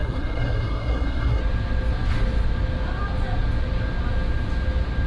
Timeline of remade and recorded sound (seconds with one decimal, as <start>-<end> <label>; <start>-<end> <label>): 0.0-1.4 remade; 1.4-5.1 recorded

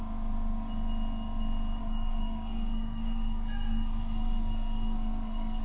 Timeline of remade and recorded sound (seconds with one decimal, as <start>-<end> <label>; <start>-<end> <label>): 0.0-1.8 recorded; 1.8-5.6 remade

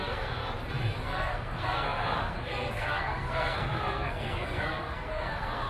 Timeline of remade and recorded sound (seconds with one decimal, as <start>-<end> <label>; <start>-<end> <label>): 0.0-0.4 remade; 0.4-1.0 recorded; 1.0-5.7 remade

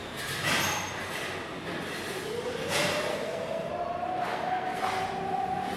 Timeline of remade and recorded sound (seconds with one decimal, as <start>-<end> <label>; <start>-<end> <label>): 0.0-3.1 recorded; 3.1-3.7 remade; 3.7-4.3 recorded; 4.3-4.8 remade; 4.8-5.8 recorded

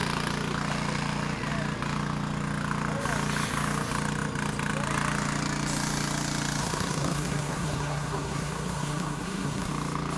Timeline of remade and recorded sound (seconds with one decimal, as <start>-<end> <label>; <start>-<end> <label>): 0.0-6.6 recorded; 6.6-9.7 remade; 9.7-10.2 recorded

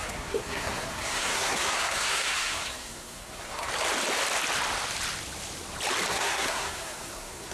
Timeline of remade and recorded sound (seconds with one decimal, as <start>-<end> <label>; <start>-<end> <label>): 0.0-3.7 remade; 3.7-6.1 recorded; 6.1-7.5 remade